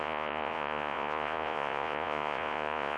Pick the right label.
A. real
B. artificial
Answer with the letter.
B